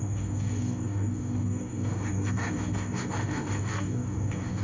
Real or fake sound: fake